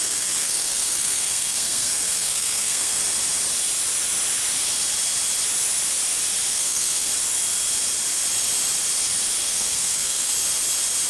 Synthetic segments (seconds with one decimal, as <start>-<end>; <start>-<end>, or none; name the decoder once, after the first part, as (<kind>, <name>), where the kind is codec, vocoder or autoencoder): 0.0-3.0 (codec, SNAC); 6.5-7.1; 9.4-10.3